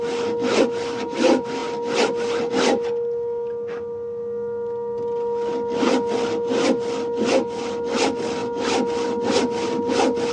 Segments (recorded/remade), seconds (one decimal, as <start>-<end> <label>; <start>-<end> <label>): 0.0-10.3 recorded